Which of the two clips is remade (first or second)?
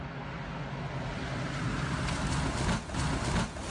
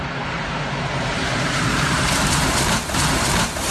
second